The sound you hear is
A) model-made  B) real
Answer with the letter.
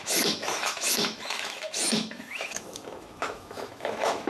A